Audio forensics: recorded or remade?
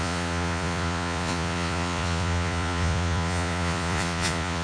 remade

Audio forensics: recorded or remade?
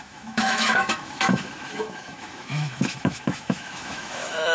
remade